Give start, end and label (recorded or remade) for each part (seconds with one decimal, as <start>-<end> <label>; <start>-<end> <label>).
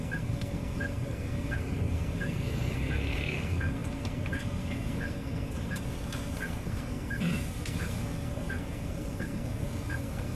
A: 0.0-10.4 remade